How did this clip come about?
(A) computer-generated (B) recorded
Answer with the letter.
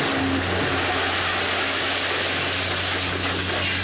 B